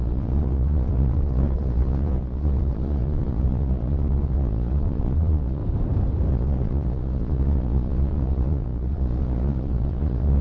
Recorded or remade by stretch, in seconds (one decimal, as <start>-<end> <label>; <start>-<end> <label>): 0.0-5.6 remade; 5.6-6.3 recorded; 6.3-10.4 remade